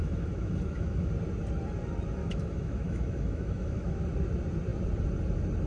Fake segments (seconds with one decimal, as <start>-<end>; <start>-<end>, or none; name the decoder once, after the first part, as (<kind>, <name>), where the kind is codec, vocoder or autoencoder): 0.0-1.1 (autoencoder, DAC-VAE); 2.2-4.0